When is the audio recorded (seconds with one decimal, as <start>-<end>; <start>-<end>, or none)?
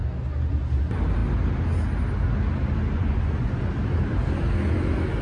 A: 0.0-2.9; 3.6-5.2